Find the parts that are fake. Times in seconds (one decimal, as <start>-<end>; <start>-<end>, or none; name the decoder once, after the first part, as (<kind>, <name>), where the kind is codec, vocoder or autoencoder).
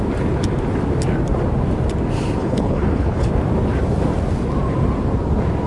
2.4-3.3 (codec, HILCodec)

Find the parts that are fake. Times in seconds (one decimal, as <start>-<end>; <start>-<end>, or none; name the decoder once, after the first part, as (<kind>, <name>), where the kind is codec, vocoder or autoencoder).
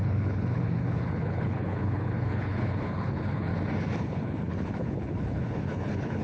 0.0-3.5 (codec, HILCodec); 4.0-6.2